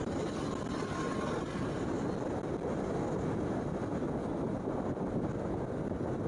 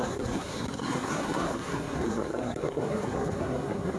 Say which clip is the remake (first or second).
second